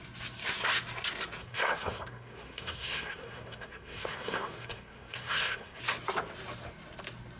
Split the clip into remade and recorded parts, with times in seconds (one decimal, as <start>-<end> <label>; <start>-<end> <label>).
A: 0.0-1.4 recorded; 1.4-5.8 remade; 5.8-7.4 recorded

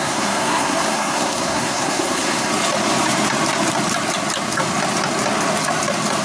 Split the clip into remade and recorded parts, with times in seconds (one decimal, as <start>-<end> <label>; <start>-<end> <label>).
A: 0.0-2.5 remade; 2.5-6.2 recorded

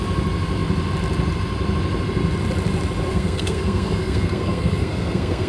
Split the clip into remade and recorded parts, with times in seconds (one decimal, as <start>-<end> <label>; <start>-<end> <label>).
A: 0.0-3.1 recorded; 3.1-5.5 remade

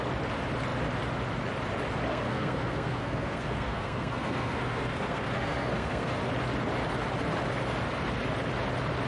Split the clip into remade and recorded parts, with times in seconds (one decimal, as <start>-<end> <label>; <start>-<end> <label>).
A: 0.0-2.1 recorded; 2.1-6.2 remade; 6.2-9.1 recorded